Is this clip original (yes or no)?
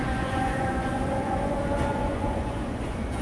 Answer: no